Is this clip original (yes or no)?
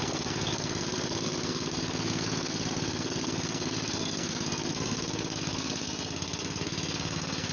no